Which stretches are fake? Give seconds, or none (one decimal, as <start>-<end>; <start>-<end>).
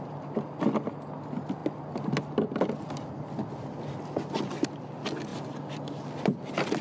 none